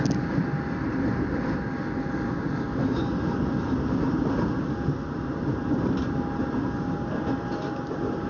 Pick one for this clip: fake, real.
real